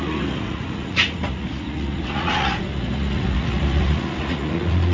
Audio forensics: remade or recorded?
remade